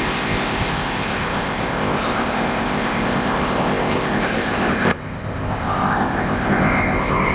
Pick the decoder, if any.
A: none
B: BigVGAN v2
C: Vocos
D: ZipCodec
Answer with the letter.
D